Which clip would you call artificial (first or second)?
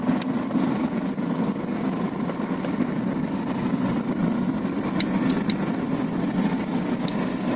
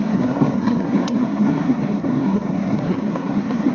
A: second